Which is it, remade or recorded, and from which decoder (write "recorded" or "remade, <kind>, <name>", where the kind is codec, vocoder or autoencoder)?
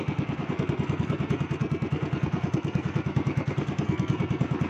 remade, codec, SNAC